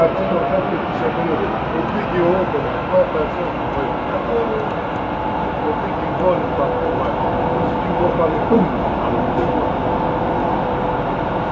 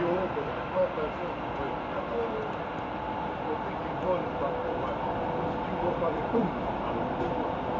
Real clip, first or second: first